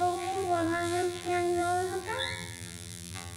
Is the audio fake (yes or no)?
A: yes